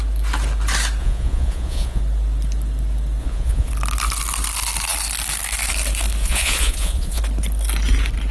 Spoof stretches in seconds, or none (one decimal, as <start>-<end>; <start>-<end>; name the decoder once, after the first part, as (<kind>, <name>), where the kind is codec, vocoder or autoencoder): 1.0-2.0 (vocoder, Vocos); 3.2-3.7; 6.2-7.2